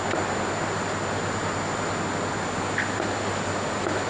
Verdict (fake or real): real